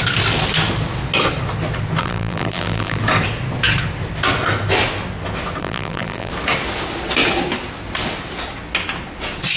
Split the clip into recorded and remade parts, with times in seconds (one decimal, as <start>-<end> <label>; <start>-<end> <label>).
0.0-2.0 recorded; 2.0-3.0 remade; 3.0-5.6 recorded; 5.6-6.3 remade; 6.3-9.6 recorded